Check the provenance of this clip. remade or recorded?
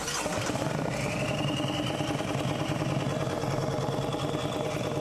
recorded